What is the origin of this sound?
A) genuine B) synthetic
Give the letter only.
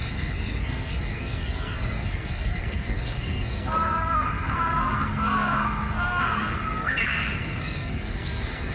B